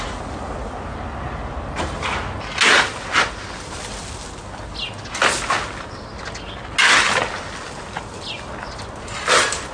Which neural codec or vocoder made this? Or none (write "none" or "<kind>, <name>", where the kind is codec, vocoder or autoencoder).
none